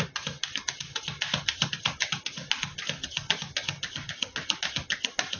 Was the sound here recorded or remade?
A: recorded